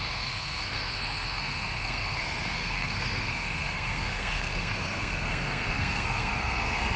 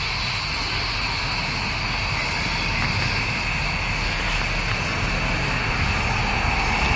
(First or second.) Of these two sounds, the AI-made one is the first